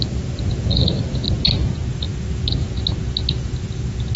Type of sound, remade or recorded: recorded